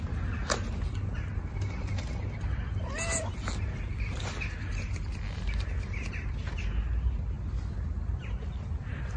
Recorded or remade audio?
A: recorded